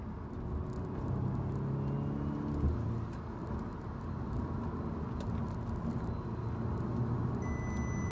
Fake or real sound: real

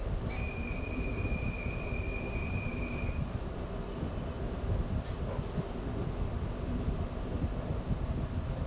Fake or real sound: real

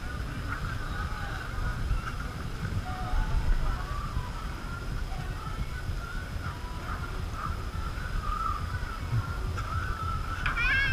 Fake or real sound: real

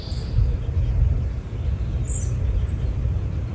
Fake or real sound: real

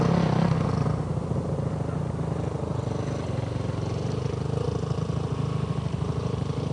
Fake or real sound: real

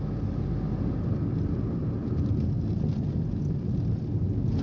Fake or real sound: real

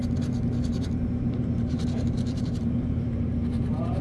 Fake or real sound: fake